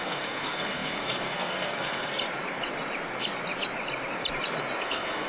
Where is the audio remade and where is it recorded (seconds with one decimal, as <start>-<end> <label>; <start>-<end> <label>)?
0.0-2.1 remade; 2.1-4.8 recorded; 4.8-5.3 remade